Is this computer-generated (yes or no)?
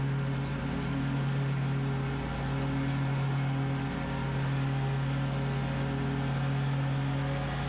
no